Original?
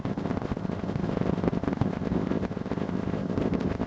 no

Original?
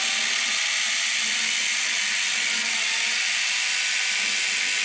yes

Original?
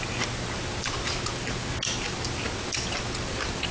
yes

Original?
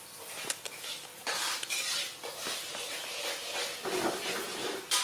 yes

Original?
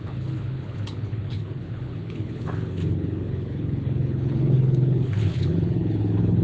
no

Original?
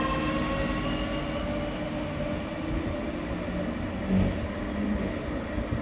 yes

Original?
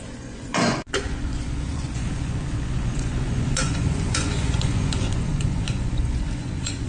no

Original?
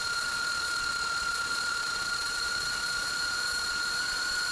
no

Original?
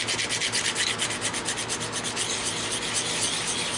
yes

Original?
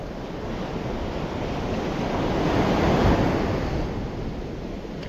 yes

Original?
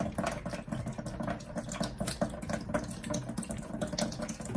yes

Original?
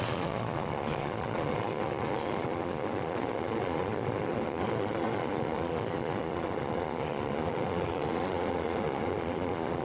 no